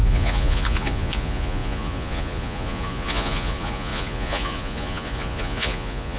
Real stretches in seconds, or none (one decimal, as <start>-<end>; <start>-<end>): none